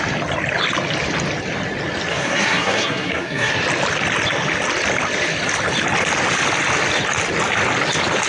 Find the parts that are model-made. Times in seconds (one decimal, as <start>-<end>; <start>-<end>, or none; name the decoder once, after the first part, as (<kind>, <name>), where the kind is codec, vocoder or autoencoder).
2.1-3.5 (codec, SNAC)